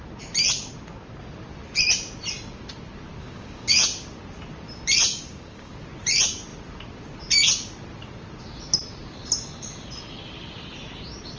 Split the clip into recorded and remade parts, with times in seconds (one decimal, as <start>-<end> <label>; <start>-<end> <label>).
0.0-3.2 recorded; 3.2-3.8 remade; 3.8-5.1 recorded; 5.1-5.7 remade; 5.7-11.4 recorded